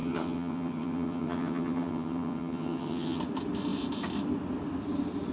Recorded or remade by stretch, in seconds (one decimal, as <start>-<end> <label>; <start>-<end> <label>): 0.0-3.2 remade; 3.2-5.3 recorded